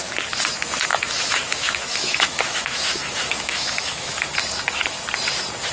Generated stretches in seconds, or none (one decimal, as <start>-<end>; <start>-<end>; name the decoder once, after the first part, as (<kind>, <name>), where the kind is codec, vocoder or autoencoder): 0.9-4.3 (autoencoder, DAC-VAE)